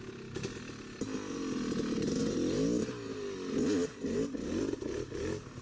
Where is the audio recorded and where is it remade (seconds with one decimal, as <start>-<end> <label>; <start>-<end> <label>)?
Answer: 0.0-5.6 recorded